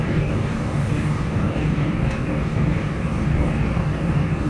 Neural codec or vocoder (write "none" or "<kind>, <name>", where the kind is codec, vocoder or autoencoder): codec, DAC